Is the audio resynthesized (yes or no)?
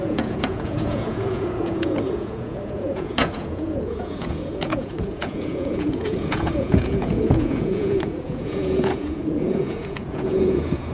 yes